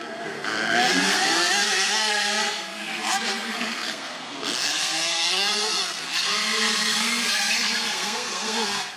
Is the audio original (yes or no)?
no